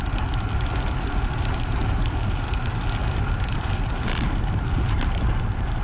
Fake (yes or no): no